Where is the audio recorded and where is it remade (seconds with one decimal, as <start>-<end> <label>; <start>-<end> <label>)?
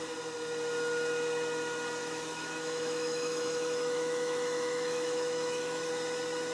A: 0.0-2.0 recorded; 2.0-5.9 remade; 5.9-6.5 recorded